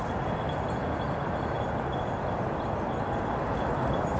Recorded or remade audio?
recorded